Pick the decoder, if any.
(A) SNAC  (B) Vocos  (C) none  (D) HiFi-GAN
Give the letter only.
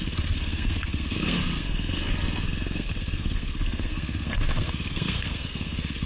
A